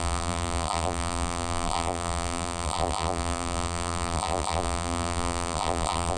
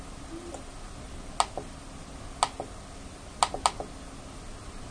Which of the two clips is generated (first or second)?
first